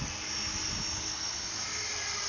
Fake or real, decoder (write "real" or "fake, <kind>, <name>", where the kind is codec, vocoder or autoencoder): real